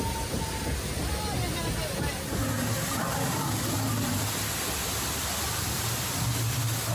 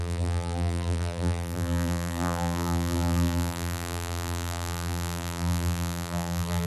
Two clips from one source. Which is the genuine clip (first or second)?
first